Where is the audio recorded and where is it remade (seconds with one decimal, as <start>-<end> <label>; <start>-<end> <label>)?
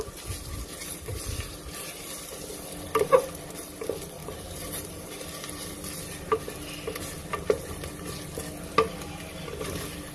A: 0.0-4.2 recorded; 4.2-5.1 remade; 5.1-10.1 recorded